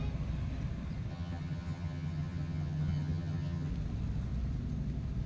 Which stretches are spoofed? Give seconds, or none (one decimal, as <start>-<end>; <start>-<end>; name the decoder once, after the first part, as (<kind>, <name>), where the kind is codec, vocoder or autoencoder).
1.1-3.7 (vocoder, HiFi-GAN)